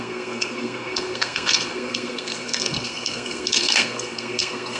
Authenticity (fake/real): fake